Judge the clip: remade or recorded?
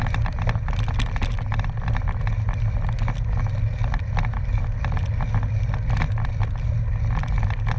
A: recorded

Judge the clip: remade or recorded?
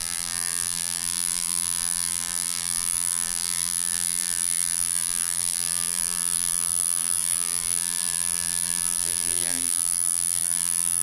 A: remade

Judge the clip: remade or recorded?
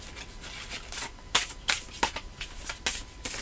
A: recorded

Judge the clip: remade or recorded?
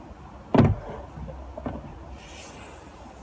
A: recorded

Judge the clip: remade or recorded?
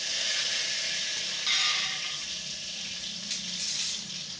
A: recorded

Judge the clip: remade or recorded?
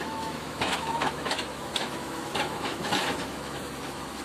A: remade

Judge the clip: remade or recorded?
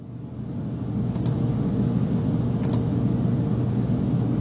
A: recorded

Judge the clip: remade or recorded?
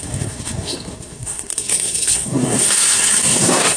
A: remade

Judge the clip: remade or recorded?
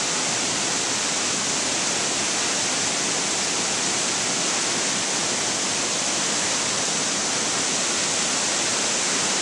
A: recorded